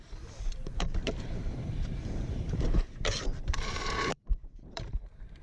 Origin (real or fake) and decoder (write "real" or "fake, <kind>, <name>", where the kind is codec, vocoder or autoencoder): fake, vocoder, BigVGAN v2